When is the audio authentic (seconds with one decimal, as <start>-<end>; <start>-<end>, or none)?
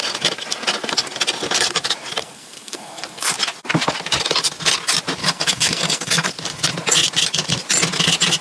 0.0-2.2; 3.3-5.2; 6.3-8.4